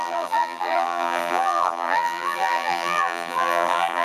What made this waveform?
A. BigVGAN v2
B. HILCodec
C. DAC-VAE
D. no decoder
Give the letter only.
A